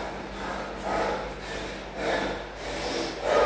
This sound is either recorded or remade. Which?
recorded